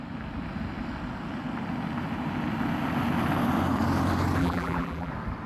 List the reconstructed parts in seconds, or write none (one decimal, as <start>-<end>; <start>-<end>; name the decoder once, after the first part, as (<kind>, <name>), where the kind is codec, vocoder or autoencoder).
4.4-5.1 (vocoder, BigVGAN v2)